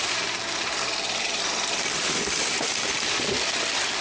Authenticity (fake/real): real